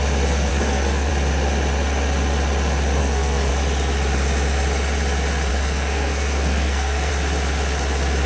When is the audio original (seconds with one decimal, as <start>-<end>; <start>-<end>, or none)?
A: 0.0-0.5; 1.1-3.0; 3.5-5.5; 7.1-8.3